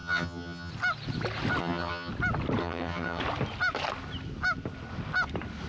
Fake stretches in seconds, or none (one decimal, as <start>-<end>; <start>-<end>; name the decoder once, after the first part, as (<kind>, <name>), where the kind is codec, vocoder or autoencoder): 0.0-0.7 (vocoder, HiFi-GAN); 1.6-2.1; 2.6-3.2